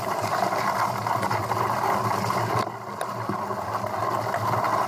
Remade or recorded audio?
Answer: recorded